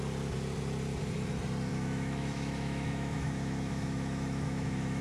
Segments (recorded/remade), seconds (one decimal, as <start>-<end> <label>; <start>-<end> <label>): 0.0-1.7 recorded; 1.7-5.0 remade